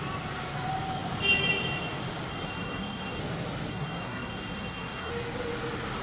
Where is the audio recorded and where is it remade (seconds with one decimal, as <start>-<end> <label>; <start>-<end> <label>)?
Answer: 0.0-2.3 recorded; 2.3-3.2 remade; 3.2-3.7 recorded; 3.7-5.1 remade; 5.1-6.0 recorded